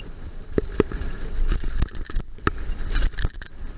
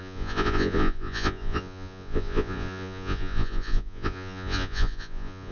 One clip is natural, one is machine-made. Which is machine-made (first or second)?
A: second